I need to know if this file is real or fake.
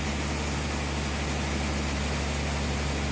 real